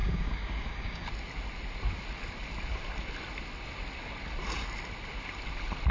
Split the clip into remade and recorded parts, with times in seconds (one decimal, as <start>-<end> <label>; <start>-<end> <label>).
0.0-1.1 remade; 1.1-5.9 recorded